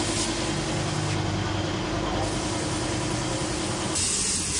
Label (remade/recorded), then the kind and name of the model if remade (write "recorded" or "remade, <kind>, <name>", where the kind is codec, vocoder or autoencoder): recorded